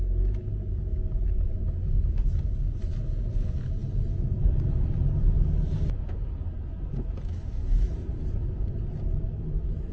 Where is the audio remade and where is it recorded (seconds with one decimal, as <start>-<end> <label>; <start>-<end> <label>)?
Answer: 0.0-9.9 recorded

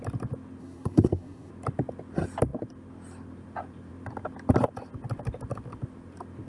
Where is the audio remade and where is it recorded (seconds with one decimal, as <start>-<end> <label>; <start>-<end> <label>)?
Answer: 0.0-0.6 recorded; 0.6-1.5 remade; 1.5-6.5 recorded

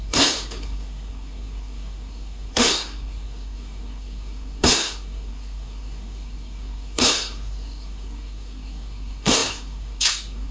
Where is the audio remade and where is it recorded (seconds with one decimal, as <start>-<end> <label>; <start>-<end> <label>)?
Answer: 0.0-10.5 remade